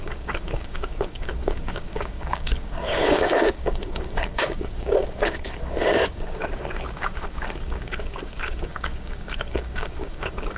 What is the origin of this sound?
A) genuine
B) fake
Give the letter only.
B